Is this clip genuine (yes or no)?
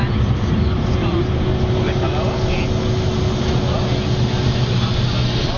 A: yes